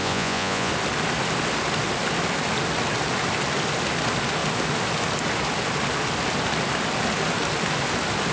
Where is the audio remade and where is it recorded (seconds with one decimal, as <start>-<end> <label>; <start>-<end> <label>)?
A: 0.0-0.7 remade; 0.7-8.3 recorded